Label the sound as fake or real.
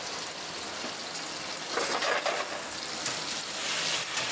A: real